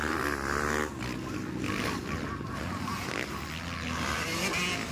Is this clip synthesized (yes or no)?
no